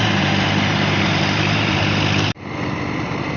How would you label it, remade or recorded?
remade